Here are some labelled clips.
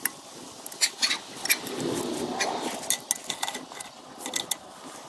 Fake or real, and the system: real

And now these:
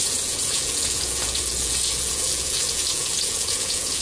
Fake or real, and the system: fake, vocoder, Vocos